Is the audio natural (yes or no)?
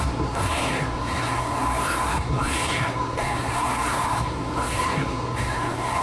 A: no